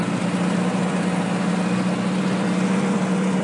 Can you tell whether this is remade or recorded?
recorded